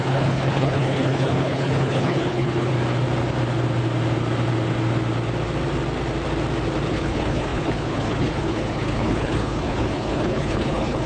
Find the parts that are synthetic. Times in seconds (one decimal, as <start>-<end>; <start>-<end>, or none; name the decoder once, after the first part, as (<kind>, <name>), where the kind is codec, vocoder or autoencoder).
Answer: 0.0-2.7 (codec, HILCodec); 6.9-11.1